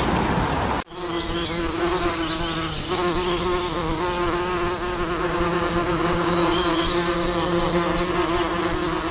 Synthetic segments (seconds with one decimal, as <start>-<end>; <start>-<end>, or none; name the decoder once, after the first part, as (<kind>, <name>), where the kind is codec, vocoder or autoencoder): 5.2-6.7 (codec, DAC)